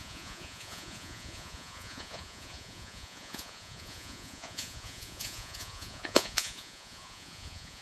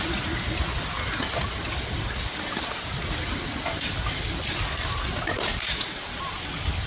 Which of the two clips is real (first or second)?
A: second